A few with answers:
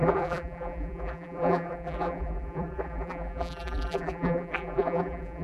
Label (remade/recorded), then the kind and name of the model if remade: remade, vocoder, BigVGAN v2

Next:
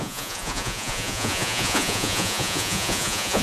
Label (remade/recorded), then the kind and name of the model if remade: remade, vocoder, Vocos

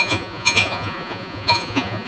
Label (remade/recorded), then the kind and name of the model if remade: remade, vocoder, Vocos